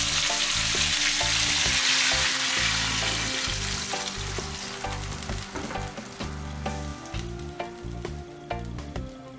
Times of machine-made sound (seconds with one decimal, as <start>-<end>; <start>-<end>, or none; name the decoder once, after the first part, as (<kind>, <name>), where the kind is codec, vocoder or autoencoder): none